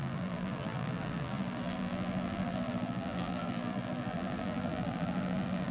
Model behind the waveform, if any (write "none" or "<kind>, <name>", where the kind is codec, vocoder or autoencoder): vocoder, BigVGAN v2